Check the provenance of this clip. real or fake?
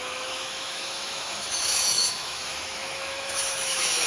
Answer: fake